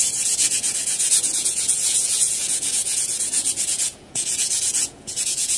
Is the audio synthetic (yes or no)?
yes